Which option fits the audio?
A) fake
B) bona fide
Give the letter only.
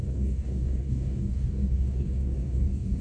A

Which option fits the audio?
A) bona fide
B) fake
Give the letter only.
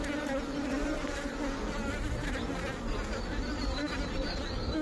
A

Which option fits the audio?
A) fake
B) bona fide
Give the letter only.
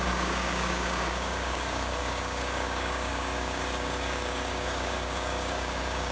A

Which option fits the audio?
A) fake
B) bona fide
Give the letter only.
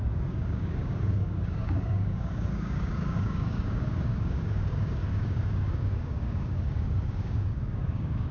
A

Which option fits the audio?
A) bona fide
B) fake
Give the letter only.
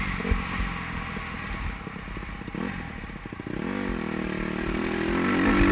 A